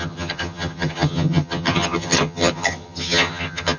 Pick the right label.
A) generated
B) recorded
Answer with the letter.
A